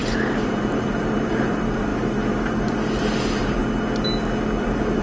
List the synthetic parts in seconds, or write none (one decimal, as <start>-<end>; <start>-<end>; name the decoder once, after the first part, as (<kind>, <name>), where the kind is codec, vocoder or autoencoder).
0.0-3.6 (vocoder, BigVGAN v2); 4.6-5.0